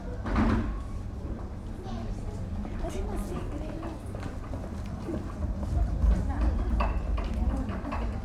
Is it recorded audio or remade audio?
recorded